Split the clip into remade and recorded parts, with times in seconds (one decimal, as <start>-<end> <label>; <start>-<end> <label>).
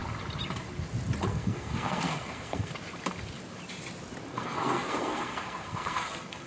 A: 0.0-1.3 recorded; 1.3-2.7 remade; 2.7-4.3 recorded; 4.3-6.5 remade